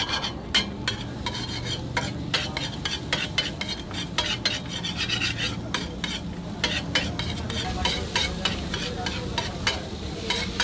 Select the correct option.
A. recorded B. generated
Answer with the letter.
A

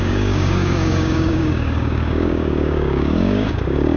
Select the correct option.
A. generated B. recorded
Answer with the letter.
A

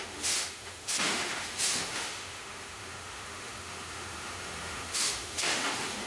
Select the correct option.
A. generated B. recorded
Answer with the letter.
A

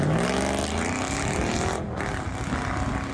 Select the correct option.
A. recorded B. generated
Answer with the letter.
A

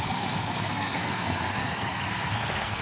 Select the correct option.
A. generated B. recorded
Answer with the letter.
A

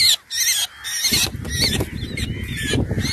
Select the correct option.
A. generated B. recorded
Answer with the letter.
B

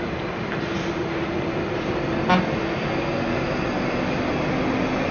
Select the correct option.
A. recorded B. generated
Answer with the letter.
A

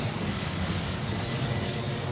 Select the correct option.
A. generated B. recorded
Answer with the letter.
A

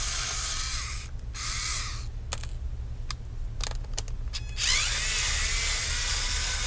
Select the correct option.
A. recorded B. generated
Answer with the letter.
A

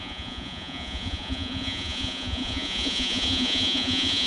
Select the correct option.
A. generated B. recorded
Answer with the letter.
A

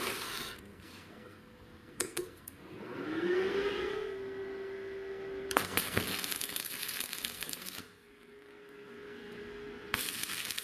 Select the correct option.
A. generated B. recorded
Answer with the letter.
A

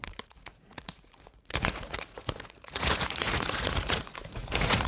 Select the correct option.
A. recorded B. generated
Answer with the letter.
B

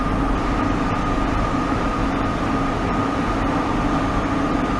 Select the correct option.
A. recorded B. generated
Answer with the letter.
A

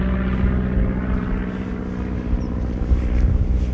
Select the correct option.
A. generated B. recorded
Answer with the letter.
B